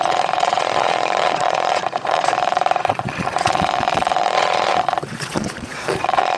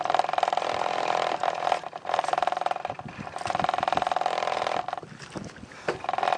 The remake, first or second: first